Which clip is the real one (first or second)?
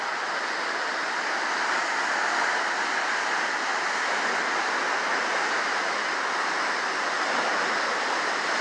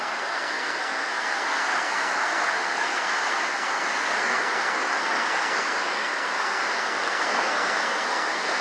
first